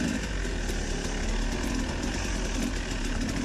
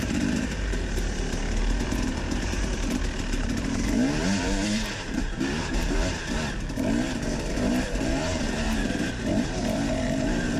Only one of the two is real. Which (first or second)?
first